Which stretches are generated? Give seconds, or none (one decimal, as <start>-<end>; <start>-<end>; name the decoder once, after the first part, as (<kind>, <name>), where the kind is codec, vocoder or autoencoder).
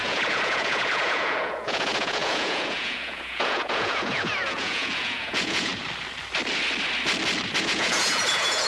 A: 0.0-5.7 (vocoder, Vocos); 7.6-8.7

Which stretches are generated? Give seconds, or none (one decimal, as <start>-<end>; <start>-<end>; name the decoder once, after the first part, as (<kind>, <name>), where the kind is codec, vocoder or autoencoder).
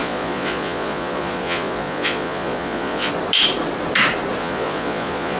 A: 0.0-3.1 (vocoder, Vocos); 4.4-5.4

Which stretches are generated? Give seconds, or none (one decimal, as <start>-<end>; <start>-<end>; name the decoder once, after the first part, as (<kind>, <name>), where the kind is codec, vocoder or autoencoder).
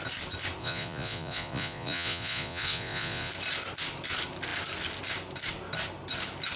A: 0.6-3.3 (vocoder, Vocos)